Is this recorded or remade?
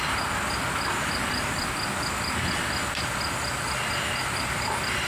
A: recorded